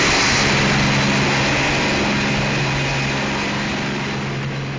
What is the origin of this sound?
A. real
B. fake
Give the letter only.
A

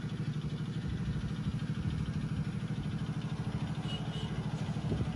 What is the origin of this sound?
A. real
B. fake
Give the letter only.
A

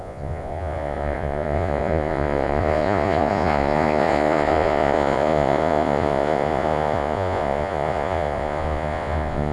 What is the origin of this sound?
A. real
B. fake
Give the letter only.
B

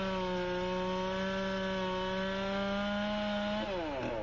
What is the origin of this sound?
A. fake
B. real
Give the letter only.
B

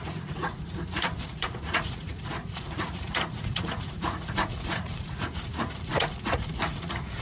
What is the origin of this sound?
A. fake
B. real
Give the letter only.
A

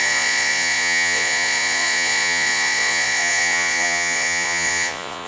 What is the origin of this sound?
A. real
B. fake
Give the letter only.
B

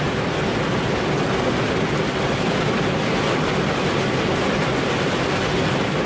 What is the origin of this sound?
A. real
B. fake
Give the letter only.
A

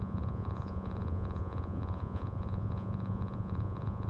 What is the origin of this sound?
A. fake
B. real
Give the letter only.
A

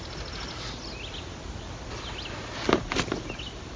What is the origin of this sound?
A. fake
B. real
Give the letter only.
B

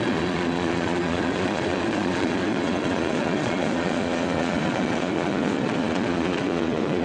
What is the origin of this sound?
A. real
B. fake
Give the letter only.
B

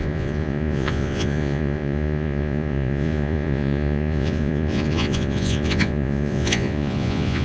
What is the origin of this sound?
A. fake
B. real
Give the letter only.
A